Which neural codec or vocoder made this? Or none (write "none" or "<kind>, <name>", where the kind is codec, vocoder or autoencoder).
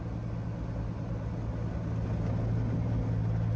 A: none